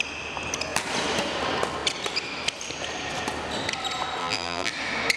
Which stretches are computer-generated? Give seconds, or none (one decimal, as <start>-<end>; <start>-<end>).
4.2-4.7